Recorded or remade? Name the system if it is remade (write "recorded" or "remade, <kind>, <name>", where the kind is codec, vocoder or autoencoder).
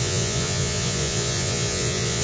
remade, vocoder, Vocos